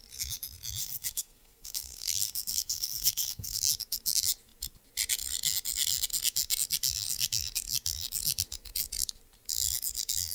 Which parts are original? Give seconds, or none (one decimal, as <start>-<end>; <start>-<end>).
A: 0.0-0.8; 3.6-10.3